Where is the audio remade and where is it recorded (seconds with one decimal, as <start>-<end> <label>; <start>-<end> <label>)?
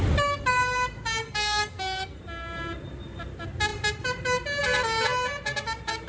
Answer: 0.0-1.2 recorded; 1.2-2.2 remade; 2.2-6.1 recorded